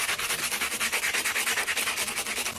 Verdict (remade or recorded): recorded